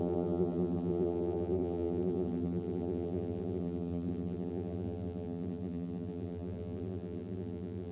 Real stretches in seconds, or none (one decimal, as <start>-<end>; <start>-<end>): none